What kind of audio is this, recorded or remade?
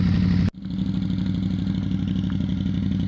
recorded